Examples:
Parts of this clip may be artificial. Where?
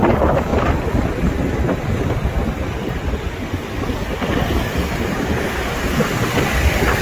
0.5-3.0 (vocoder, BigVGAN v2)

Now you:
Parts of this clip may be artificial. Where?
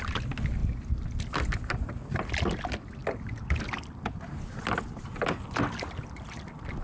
none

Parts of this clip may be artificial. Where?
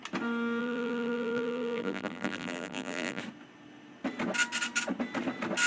0.6-3.2 (vocoder, BigVGAN v2)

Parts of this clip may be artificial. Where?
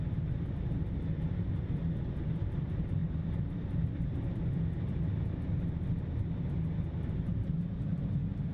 3.0-4.4 (vocoder, BigVGAN v2); 7.3-8.1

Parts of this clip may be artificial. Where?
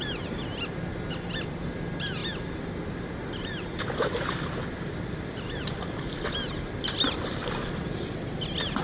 0.0-8.8 (vocoder, BigVGAN v2)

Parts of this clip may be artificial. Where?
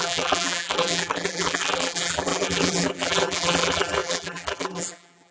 0.0-5.3 (vocoder, BigVGAN v2)